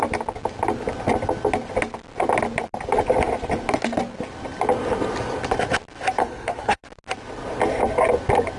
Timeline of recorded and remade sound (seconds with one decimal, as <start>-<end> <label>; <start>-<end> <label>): 0.0-6.2 recorded; 6.2-6.8 remade; 6.8-8.6 recorded